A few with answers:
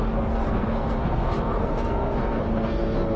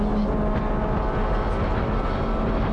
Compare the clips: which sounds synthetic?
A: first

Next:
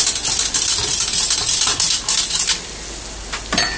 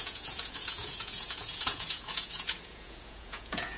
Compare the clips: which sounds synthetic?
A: second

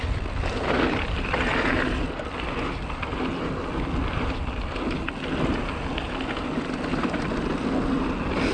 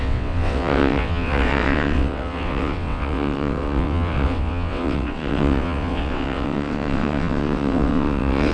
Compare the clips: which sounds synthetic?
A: second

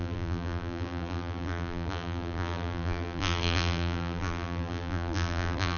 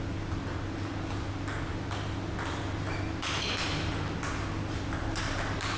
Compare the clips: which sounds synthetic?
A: first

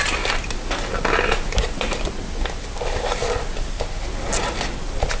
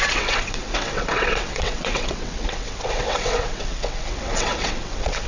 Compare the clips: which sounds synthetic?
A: second